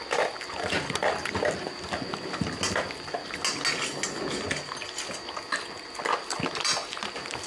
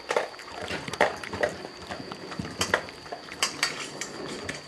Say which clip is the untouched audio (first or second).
first